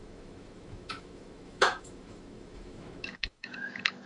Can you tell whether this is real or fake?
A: fake